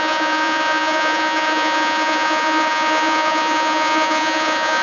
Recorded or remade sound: remade